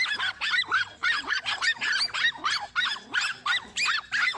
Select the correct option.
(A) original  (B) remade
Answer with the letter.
A